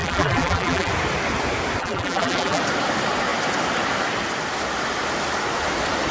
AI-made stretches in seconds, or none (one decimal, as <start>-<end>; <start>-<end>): 0.0-0.9; 1.8-2.6